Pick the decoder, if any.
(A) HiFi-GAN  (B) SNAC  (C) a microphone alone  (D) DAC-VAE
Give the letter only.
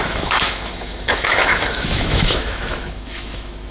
D